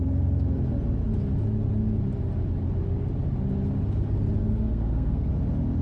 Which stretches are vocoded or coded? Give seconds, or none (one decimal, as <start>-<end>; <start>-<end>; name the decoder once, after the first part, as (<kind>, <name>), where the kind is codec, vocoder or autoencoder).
4.4-5.3 (codec, SNAC)